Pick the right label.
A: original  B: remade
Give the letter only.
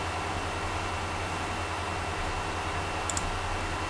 A